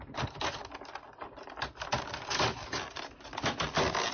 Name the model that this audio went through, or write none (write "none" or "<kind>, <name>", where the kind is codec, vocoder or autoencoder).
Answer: none